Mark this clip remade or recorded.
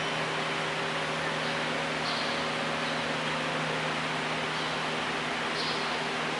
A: recorded